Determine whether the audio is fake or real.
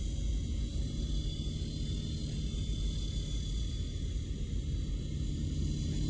real